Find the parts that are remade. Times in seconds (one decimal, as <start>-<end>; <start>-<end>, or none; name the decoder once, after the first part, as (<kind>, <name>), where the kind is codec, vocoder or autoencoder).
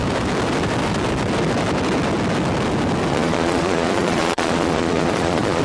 3.1-5.6 (vocoder, Vocos)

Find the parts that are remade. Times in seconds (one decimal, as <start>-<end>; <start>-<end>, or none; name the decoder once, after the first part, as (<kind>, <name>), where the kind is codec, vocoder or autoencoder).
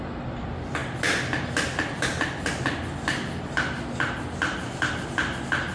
none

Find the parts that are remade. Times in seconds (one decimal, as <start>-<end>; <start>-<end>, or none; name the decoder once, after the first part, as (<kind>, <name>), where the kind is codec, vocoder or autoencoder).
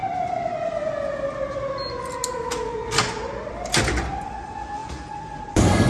3.5-5.9 (vocoder, BigVGAN v2)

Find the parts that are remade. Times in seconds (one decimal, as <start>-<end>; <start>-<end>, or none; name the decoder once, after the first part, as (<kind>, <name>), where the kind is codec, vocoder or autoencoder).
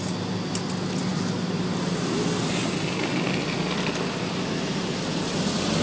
none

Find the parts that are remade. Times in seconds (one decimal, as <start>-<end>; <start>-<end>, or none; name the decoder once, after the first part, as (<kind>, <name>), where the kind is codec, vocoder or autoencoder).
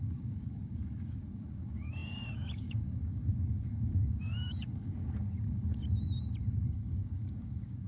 0.0-5.8 (codec, DAC); 6.4-7.9